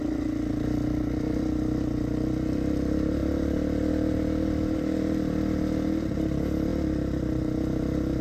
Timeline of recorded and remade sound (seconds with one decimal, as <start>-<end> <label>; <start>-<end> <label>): 0.0-8.2 recorded